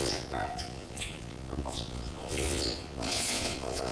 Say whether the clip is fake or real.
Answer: fake